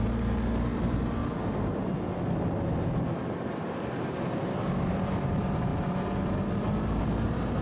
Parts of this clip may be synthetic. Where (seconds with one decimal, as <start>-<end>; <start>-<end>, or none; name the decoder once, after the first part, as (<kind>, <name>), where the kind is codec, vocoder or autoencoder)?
0.0-1.2 (vocoder, BigVGAN v2); 3.2-7.6